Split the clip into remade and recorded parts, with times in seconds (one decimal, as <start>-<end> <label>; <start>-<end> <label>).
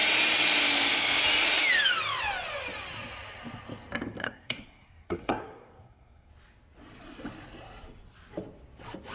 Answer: 0.0-4.2 recorded; 4.2-6.3 remade; 6.3-9.1 recorded